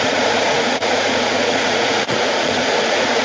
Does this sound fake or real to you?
fake